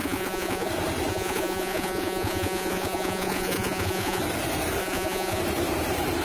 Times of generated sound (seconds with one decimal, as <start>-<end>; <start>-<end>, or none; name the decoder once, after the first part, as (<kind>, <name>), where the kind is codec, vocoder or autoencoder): 0.0-0.7 (vocoder, Vocos); 1.1-4.2; 4.8-5.4